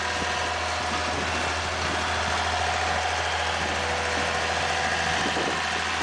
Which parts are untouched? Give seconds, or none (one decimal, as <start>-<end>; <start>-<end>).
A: 0.0-6.0